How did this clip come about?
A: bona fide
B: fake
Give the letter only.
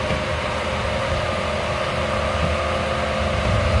A